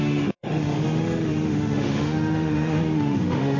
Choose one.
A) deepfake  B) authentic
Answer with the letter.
A